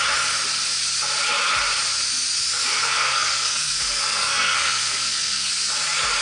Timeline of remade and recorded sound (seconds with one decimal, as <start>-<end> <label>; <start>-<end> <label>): 0.0-2.7 recorded; 2.7-5.5 remade; 5.5-6.2 recorded